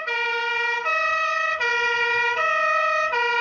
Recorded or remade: remade